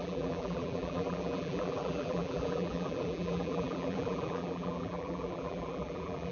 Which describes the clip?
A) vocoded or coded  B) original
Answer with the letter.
A